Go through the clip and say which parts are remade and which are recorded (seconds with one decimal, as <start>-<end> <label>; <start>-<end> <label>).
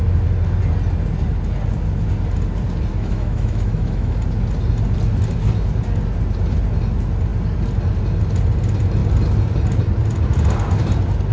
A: 0.0-2.9 recorded; 2.9-4.2 remade; 4.2-11.3 recorded